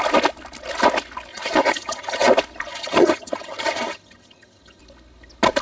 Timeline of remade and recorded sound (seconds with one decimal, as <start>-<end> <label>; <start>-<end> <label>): 0.0-1.3 recorded; 1.3-2.3 remade; 2.3-2.7 recorded; 2.7-4.8 remade; 4.8-5.6 recorded

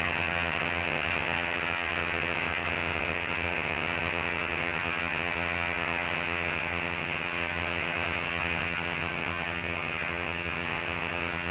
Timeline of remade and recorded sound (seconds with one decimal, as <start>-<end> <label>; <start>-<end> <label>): 0.0-11.5 remade

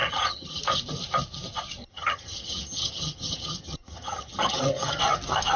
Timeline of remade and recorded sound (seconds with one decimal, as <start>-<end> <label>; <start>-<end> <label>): 0.0-0.6 remade; 0.6-1.8 recorded; 1.8-5.0 remade; 5.0-5.6 recorded

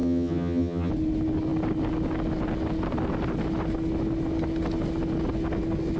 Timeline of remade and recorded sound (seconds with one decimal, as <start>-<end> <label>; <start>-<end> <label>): 0.0-0.9 remade; 0.9-6.0 recorded